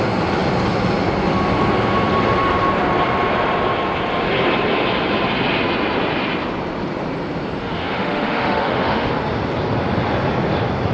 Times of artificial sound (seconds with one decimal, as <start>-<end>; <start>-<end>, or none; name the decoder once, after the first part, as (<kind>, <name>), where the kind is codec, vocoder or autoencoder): 7.6-9.1 (autoencoder, DAC-VAE)